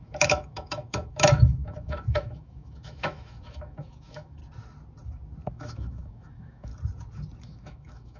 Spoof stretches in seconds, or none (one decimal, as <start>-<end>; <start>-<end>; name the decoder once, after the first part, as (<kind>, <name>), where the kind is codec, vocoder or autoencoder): 0.0-4.4 (autoencoder, DAC-VAE); 5.5-6.7; 7.4-8.2